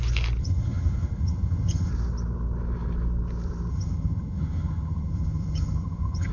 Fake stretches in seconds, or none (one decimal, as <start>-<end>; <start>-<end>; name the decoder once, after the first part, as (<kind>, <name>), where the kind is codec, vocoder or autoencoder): 0.4-1.9 (vocoder, HiFi-GAN); 3.7-6.3